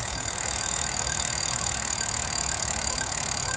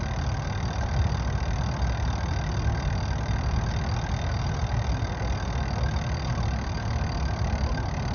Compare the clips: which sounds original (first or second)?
second